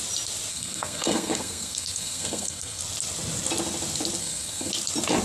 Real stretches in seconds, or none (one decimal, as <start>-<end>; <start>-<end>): 0.0-0.5; 2.8-4.2; 4.7-5.2